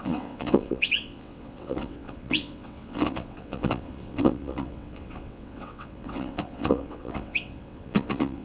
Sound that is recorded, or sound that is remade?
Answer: remade